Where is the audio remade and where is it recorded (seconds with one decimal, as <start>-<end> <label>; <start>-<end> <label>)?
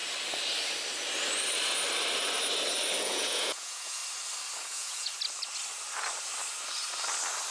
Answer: 0.0-3.0 recorded; 3.0-4.0 remade; 4.0-4.6 recorded; 4.6-5.1 remade; 5.1-7.5 recorded